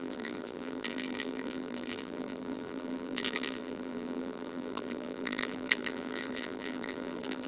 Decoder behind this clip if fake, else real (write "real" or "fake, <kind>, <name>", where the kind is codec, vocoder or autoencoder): fake, vocoder, BigVGAN v2